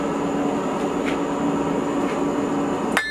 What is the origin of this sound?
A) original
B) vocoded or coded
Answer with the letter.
A